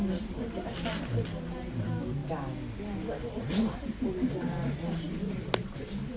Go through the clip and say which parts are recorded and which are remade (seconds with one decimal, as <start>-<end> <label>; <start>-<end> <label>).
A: 0.0-6.2 recorded